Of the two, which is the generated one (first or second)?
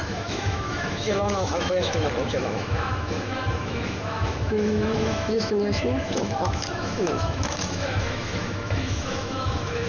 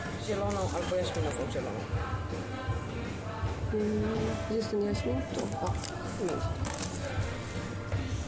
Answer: first